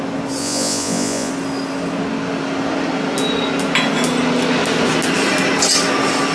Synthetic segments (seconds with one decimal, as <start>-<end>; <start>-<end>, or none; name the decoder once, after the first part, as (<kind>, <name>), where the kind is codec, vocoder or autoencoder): 0.4-1.3 (vocoder, Vocos)